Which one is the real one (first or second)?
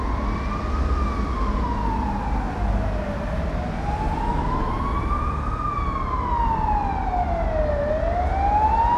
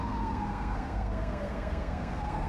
first